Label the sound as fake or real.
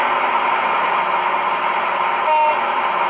real